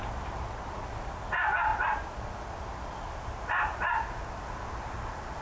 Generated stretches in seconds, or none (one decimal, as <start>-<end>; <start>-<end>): 0.0-0.8